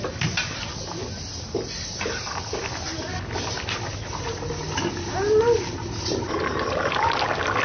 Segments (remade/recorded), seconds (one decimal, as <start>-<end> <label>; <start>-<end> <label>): 0.0-7.6 recorded